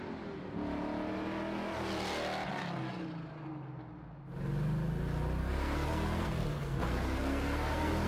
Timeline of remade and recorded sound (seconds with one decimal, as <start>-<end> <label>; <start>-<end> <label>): 0.0-5.4 recorded; 5.4-8.1 remade